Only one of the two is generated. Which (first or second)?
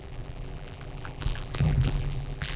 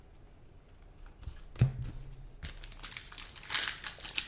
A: first